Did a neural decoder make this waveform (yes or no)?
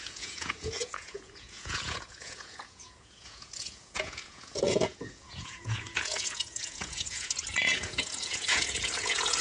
yes